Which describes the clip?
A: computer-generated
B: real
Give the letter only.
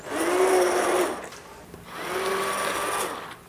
B